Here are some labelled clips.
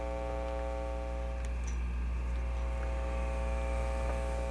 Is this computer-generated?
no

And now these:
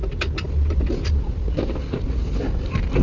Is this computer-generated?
no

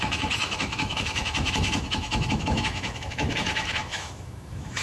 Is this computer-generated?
yes